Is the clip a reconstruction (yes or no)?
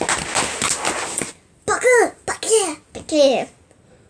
no